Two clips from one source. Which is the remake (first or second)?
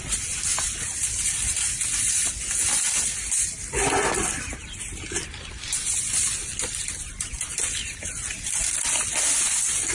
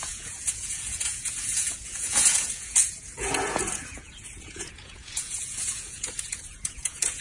second